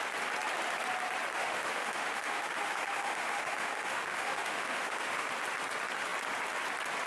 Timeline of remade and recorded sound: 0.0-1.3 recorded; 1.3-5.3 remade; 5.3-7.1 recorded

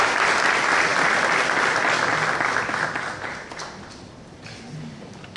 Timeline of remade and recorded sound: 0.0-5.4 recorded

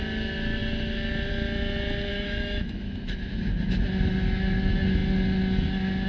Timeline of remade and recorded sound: 0.0-2.1 recorded; 2.1-3.4 remade; 3.4-6.1 recorded